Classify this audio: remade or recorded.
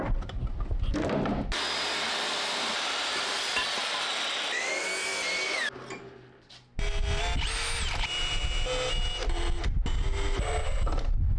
recorded